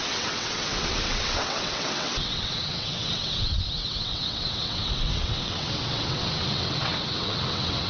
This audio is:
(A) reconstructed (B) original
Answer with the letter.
A